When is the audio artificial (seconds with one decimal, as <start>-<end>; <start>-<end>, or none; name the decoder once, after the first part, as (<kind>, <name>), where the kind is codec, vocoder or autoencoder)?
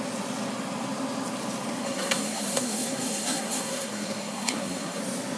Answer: 1.8-5.0 (codec, SNAC)